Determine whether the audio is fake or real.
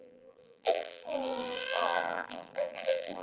fake